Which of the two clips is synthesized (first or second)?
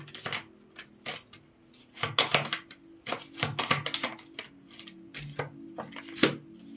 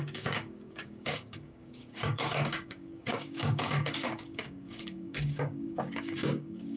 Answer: second